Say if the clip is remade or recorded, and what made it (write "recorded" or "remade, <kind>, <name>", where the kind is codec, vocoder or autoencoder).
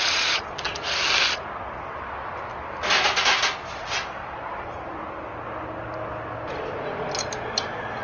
recorded